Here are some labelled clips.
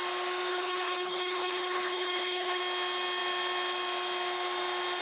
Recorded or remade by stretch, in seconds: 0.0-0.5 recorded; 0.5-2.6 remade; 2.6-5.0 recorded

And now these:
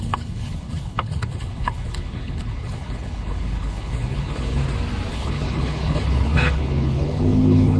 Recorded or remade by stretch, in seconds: 0.0-4.6 remade; 4.6-5.1 recorded; 5.1-7.8 remade